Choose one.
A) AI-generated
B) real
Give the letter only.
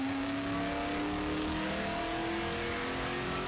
A